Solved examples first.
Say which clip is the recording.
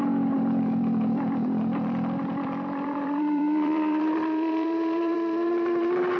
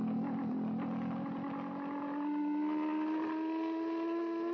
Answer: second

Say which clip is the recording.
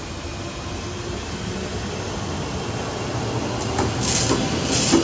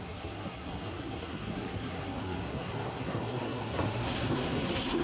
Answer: first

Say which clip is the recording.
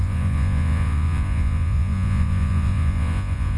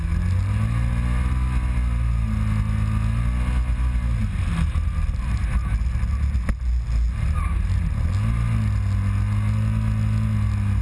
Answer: second